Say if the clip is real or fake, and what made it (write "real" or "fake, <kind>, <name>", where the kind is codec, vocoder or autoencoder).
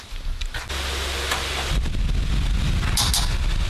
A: real